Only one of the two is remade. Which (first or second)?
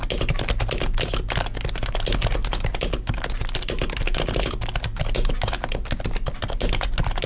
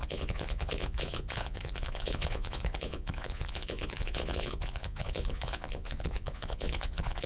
second